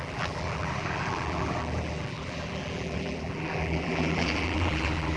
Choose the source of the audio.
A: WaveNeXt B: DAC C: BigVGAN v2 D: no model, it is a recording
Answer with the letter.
C